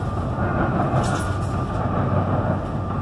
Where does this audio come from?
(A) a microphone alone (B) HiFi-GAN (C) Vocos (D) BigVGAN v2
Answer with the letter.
A